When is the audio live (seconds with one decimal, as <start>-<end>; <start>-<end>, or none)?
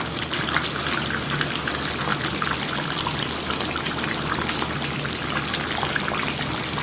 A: 0.0-6.8